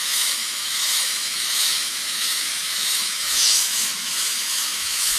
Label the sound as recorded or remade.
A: remade